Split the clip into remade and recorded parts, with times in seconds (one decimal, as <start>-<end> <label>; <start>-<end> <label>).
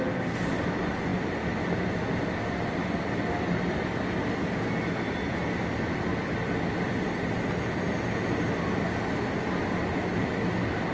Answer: 0.0-10.9 recorded